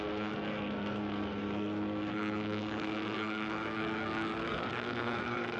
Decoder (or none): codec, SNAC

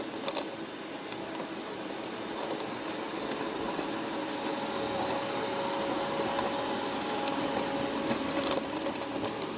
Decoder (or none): none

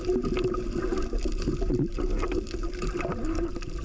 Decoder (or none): none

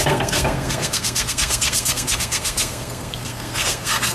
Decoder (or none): codec, SNAC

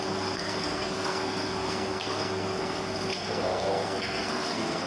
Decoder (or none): codec, SNAC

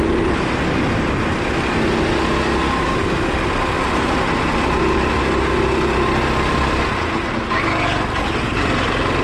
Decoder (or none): none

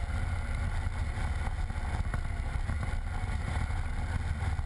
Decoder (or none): none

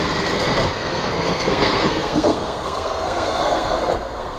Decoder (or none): codec, SNAC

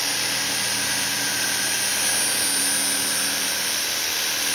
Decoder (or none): none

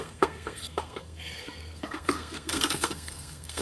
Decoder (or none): codec, SNAC